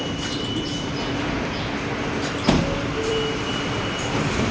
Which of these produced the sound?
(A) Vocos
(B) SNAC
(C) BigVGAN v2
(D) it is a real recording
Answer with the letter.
C